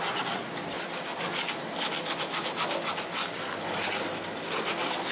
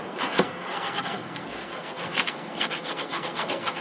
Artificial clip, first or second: second